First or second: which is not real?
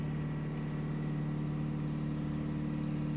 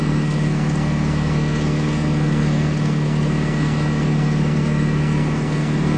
second